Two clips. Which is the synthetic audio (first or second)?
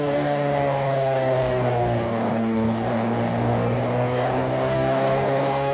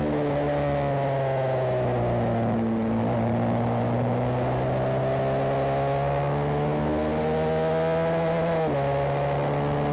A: first